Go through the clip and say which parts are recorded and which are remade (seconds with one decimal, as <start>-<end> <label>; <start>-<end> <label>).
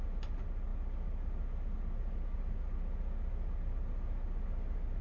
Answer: 0.0-5.0 recorded